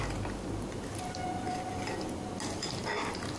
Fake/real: real